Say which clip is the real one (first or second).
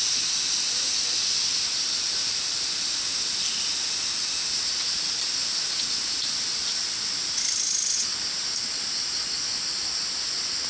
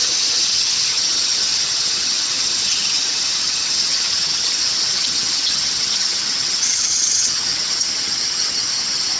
first